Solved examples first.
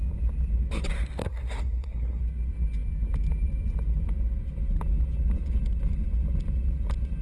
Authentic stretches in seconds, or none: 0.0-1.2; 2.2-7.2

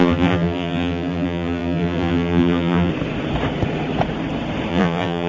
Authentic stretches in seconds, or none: 2.9-4.7

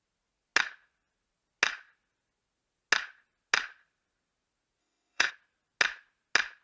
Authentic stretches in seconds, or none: 0.0-4.8; 5.3-6.6

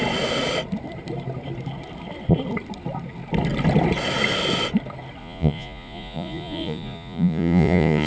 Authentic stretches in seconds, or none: 0.0-5.2